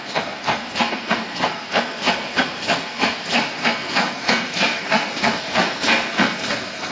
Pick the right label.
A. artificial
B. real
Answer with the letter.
A